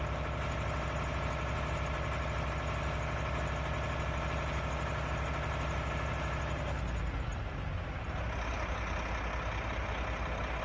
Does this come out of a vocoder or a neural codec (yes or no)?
no